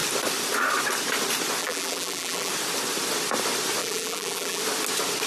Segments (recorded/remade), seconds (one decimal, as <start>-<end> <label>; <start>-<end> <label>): 0.0-1.6 recorded; 1.6-2.5 remade; 2.5-3.8 recorded; 3.8-4.6 remade; 4.6-5.3 recorded